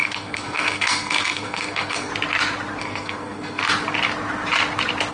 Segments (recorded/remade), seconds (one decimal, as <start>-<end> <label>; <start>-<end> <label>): 0.0-2.1 remade; 2.1-2.8 recorded; 2.8-3.6 remade; 3.6-5.1 recorded